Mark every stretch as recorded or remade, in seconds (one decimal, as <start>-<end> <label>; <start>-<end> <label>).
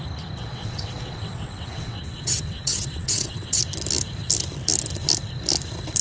0.0-0.4 recorded; 0.4-3.6 remade; 3.6-6.0 recorded